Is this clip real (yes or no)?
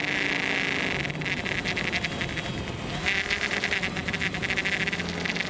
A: yes